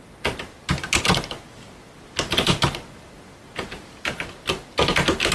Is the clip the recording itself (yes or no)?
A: yes